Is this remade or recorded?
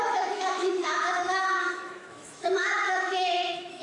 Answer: remade